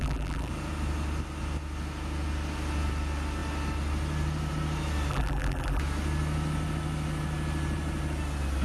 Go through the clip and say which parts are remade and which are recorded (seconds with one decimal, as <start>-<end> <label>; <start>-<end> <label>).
0.0-0.5 remade; 0.5-5.1 recorded; 5.1-5.8 remade; 5.8-8.6 recorded